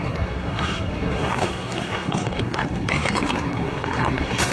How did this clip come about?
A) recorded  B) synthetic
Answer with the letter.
B